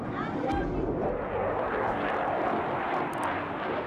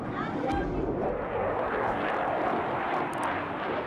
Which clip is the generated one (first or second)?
second